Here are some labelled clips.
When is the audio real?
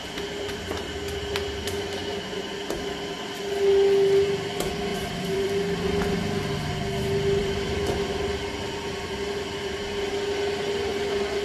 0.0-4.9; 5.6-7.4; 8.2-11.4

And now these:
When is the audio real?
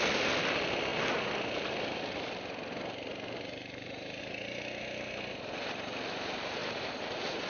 0.0-6.6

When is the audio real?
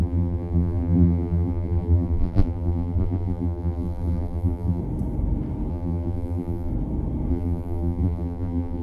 4.8-5.7; 6.7-7.3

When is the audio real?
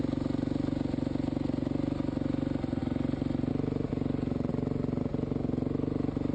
0.0-2.8; 3.5-4.5; 5.0-6.3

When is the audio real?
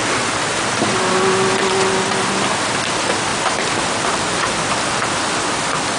0.0-1.1